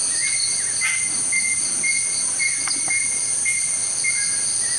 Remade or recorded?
recorded